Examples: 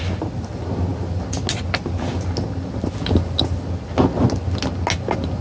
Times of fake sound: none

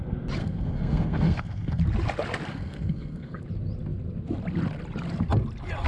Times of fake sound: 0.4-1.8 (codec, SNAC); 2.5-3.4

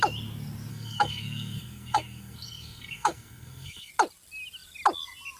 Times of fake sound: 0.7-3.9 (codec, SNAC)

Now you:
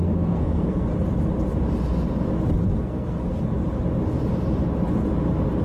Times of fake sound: 0.0-0.9 (codec, SNAC); 2.8-3.5